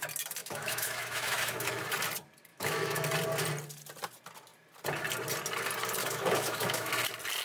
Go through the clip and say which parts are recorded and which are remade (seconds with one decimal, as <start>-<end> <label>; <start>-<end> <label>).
0.0-0.4 recorded; 0.4-1.8 remade; 1.8-2.5 recorded; 2.5-3.0 remade; 3.0-6.0 recorded; 6.0-6.9 remade; 6.9-7.4 recorded